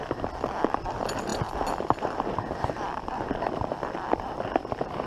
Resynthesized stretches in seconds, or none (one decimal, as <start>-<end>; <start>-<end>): 0.0-5.1